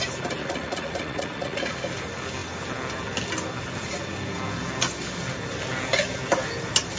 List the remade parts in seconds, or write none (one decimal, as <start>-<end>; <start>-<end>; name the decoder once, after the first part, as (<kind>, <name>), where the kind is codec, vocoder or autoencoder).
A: 0.4-1.6 (vocoder, Vocos)